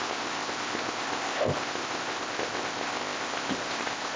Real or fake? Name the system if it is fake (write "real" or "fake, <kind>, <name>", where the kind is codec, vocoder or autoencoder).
fake, codec, ZipCodec